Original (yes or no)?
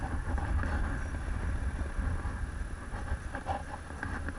yes